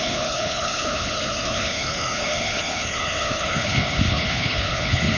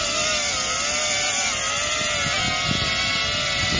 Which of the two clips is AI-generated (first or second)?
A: first